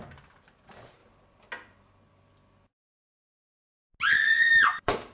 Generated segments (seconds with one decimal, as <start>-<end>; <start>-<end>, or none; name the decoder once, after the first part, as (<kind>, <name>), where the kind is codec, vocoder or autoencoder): 0.0-1.0 (vocoder, BigVGAN v2); 4.1-5.1

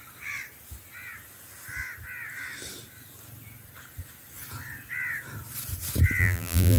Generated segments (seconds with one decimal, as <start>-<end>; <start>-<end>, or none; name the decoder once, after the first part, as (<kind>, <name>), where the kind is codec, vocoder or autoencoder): 6.2-6.8 (vocoder, BigVGAN v2)

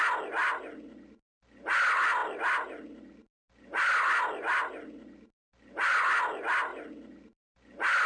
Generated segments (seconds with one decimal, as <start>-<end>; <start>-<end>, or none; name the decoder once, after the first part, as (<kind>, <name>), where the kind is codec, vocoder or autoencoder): 0.4-1.1 (vocoder, BigVGAN v2); 2.2-5.9; 6.7-8.1

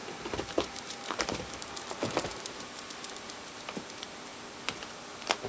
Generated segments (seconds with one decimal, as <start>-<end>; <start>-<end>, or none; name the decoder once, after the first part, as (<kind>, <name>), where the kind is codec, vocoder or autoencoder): 0.0-4.3 (vocoder, BigVGAN v2); 4.8-5.5

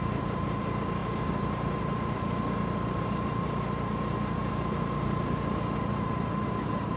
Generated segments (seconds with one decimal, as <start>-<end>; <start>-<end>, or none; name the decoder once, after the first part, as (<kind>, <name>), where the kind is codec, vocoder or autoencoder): 1.0-1.8 (vocoder, BigVGAN v2)